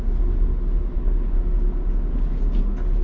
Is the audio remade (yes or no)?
no